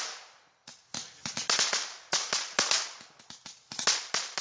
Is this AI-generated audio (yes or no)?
no